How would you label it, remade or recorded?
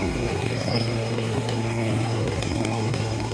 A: remade